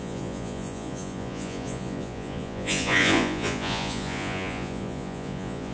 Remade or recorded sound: remade